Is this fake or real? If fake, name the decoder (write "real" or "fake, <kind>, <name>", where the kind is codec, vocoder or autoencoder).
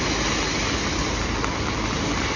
real